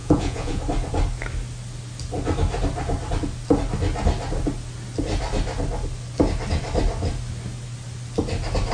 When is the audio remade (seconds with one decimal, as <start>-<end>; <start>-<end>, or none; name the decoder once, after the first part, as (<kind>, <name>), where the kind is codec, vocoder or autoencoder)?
0.0-0.6 (vocoder, Vocos)

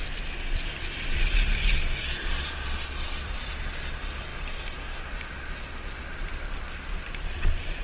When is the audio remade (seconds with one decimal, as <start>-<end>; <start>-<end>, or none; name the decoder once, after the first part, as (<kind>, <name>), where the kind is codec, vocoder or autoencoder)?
3.0-7.8 (vocoder, BigVGAN v2)

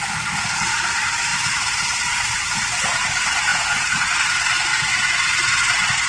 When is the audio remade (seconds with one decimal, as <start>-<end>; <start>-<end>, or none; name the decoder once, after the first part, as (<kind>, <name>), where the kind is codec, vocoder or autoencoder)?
3.5-4.1 (vocoder, Vocos); 4.7-5.6